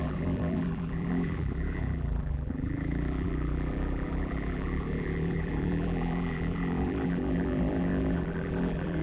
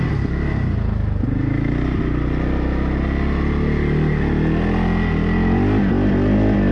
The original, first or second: second